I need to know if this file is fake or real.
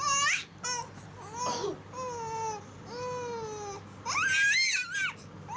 real